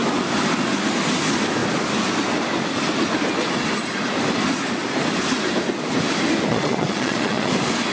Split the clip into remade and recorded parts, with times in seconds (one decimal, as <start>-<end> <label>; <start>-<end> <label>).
0.0-6.5 recorded; 6.5-7.5 remade; 7.5-7.9 recorded